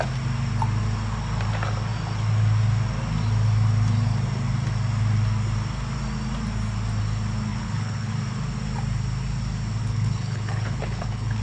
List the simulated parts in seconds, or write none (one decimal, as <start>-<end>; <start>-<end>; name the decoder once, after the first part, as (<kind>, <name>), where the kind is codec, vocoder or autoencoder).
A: 7.5-8.1 (codec, HILCodec); 9.8-11.4